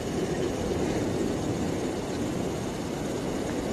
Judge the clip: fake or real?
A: fake